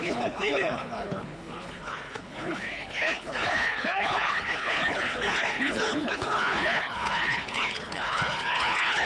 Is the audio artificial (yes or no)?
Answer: yes